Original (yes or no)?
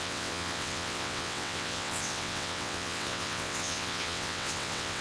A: no